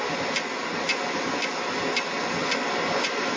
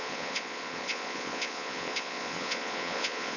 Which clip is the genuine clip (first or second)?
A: first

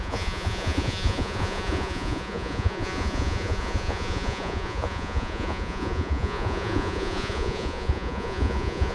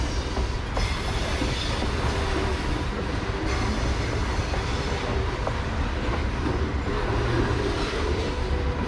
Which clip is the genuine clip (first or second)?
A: second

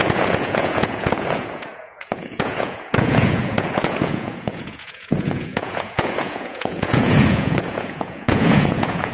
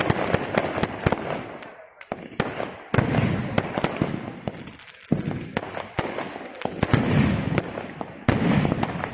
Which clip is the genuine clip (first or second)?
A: second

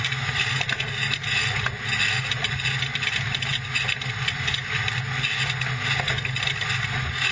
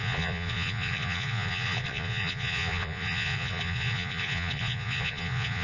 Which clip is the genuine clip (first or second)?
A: first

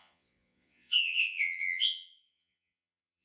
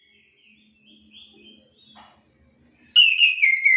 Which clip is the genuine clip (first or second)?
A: second